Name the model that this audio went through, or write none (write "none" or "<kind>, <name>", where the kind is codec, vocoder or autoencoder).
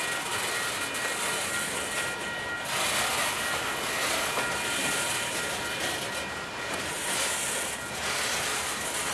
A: none